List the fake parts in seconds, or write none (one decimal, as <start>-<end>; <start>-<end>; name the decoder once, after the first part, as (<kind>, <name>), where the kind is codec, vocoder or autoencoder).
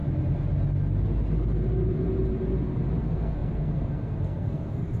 3.0-5.0 (codec, SNAC)